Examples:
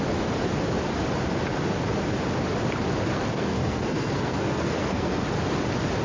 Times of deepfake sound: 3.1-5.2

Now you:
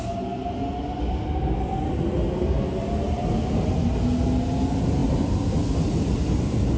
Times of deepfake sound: none

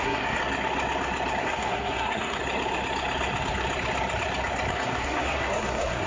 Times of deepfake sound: 0.0-0.4; 1.4-2.4; 4.7-6.1